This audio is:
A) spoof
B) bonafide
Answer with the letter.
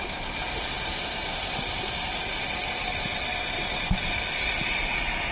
B